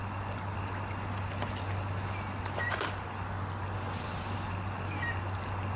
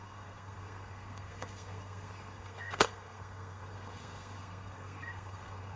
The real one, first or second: first